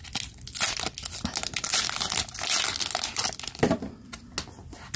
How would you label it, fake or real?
real